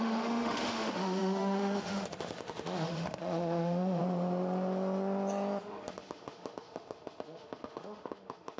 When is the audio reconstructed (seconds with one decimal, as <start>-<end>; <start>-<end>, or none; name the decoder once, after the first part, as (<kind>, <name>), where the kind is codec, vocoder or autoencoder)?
0.0-4.0 (autoencoder, DAC-VAE); 5.6-8.6